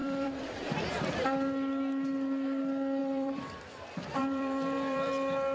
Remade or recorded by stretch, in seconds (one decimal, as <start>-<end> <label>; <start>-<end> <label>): 0.0-0.7 remade; 0.7-3.0 recorded; 3.0-3.7 remade; 3.7-4.2 recorded; 4.2-5.1 remade; 5.1-5.5 recorded